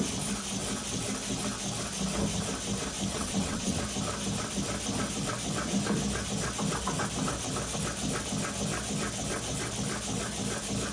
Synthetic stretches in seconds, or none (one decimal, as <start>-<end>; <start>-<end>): 3.1-3.8